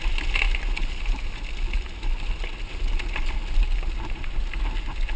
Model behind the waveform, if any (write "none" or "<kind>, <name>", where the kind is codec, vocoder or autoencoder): none